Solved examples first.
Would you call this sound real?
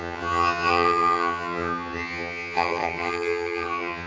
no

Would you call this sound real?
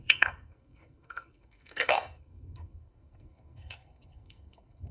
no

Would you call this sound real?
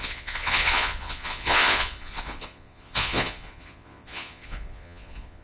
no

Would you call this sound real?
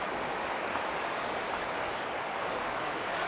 no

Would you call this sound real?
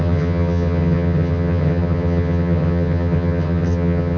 no